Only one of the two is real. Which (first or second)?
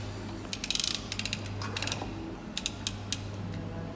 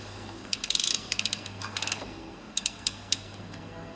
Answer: first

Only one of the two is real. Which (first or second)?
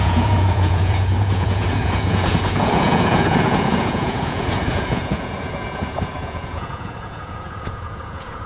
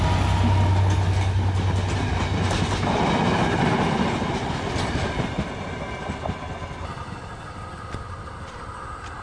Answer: second